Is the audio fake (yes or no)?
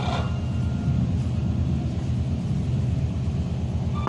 no